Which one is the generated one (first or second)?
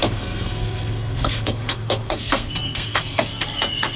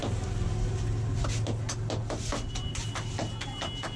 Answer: first